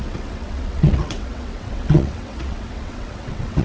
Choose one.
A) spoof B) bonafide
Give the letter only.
A